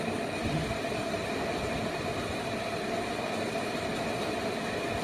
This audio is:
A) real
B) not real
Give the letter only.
A